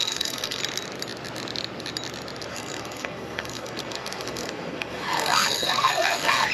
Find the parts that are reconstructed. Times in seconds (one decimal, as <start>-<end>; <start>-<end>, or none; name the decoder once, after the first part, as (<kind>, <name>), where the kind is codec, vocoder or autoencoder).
0.0-0.6 (codec, SNAC); 2.5-6.5